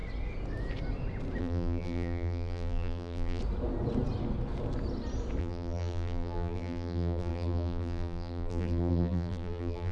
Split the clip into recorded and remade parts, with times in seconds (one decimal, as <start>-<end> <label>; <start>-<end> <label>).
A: 0.0-1.4 recorded; 1.4-3.4 remade; 3.4-5.4 recorded; 5.4-9.9 remade